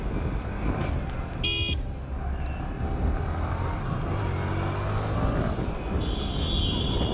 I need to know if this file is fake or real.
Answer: real